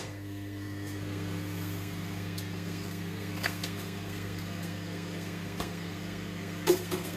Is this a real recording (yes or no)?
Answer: no